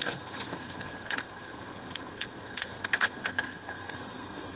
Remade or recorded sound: remade